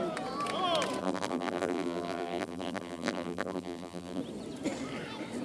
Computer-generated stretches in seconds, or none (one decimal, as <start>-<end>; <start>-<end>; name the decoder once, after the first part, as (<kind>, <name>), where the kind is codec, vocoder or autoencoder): 1.0-4.2 (vocoder, BigVGAN v2)